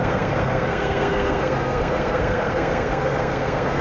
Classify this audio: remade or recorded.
remade